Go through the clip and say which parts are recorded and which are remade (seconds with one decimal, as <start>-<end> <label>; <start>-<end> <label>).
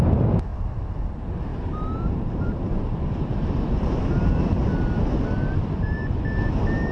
0.0-1.5 recorded; 1.5-4.0 remade; 4.0-6.9 recorded